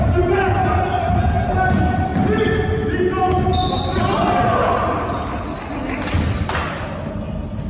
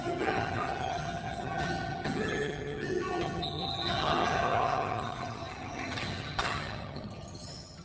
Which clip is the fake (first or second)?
second